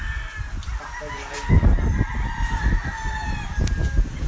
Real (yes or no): yes